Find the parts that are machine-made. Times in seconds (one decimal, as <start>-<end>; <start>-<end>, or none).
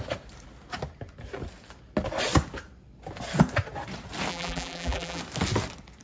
4.3-5.2